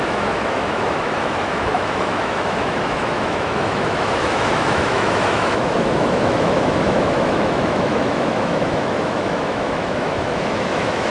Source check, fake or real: fake